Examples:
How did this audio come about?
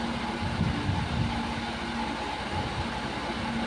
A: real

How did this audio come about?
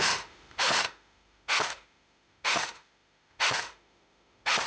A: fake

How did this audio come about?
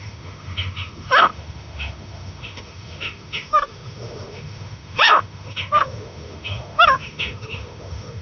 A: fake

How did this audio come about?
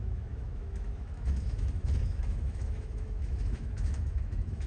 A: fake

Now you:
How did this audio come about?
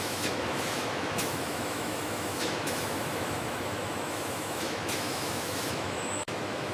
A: fake